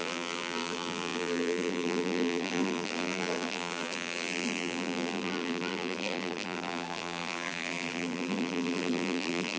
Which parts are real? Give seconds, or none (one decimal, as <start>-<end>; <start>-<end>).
none